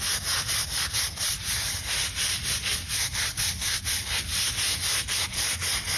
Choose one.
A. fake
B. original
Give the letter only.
B